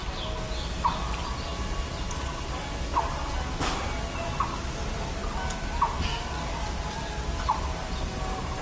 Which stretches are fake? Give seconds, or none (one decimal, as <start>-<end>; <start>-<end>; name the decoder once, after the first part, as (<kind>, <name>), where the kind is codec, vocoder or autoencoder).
none